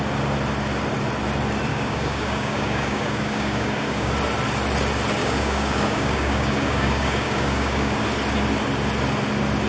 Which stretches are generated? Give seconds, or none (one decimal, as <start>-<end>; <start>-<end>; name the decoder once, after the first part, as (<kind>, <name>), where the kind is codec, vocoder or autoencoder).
1.7-4.1 (codec, DAC); 5.2-8.0